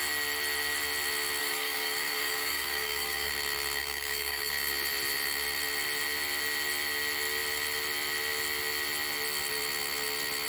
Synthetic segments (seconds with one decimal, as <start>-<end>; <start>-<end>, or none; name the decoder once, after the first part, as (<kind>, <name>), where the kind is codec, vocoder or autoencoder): 1.4-3.3 (codec, DAC); 3.8-4.5